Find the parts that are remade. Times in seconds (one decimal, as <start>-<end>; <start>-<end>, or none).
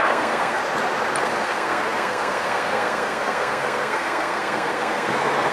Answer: 0.0-0.6; 1.2-5.5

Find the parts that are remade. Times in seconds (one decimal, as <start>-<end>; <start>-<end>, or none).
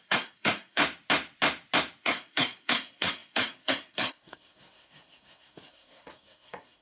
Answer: 0.0-0.8; 2.0-6.8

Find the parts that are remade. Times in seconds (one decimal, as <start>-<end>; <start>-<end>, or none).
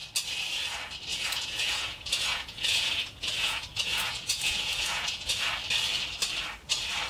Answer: 1.1-5.4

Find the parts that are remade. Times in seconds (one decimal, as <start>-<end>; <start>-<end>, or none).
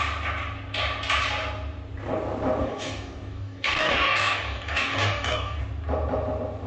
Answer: 2.6-5.6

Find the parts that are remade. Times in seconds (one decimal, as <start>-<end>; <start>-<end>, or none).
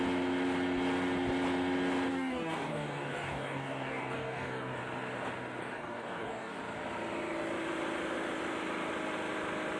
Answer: 2.1-4.8; 5.6-6.6